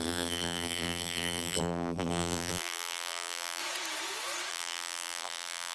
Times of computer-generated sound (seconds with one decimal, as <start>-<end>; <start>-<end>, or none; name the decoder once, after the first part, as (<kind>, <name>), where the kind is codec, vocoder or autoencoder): 0.0-3.6 (vocoder, BigVGAN v2); 4.5-5.7